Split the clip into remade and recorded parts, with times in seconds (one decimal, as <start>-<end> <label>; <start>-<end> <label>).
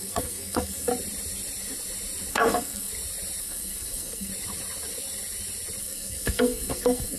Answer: 0.0-0.9 remade; 0.9-2.3 recorded; 2.3-2.9 remade; 2.9-3.4 recorded; 3.4-4.3 remade; 4.3-5.8 recorded; 5.8-7.2 remade